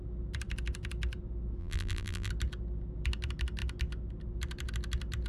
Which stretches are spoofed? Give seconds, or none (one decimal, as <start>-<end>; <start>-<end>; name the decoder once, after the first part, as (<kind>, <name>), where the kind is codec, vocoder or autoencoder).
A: 1.6-2.3 (vocoder, BigVGAN v2)